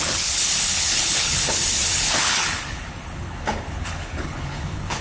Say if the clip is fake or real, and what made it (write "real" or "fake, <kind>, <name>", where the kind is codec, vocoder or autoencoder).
fake, codec, HILCodec